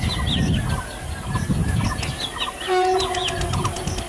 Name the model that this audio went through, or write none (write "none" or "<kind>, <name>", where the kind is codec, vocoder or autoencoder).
none